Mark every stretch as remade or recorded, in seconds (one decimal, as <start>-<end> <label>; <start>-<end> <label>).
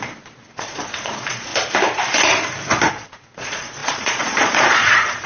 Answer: 0.0-1.5 remade; 1.5-2.9 recorded; 2.9-5.3 remade